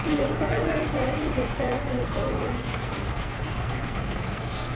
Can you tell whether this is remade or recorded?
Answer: remade